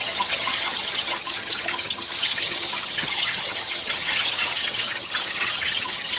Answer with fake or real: fake